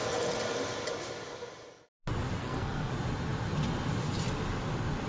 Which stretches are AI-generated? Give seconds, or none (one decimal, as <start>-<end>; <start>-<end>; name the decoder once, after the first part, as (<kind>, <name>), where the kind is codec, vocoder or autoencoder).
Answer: 2.4-2.9 (codec, SNAC)